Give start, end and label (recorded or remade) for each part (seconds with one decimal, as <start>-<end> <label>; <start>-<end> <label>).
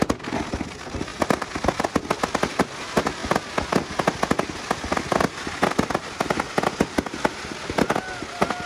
0.0-1.1 recorded; 1.1-1.8 remade; 1.8-8.7 recorded